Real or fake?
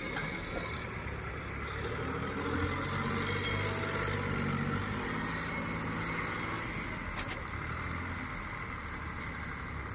real